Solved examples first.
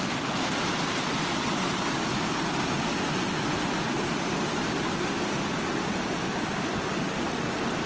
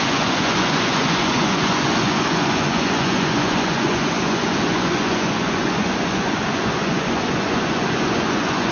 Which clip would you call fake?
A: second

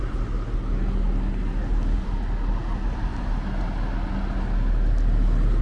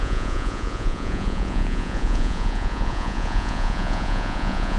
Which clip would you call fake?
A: second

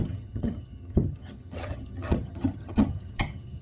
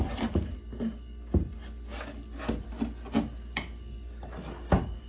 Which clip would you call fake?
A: first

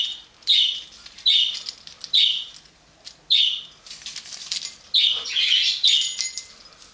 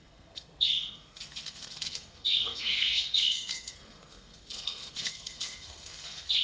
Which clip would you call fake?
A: second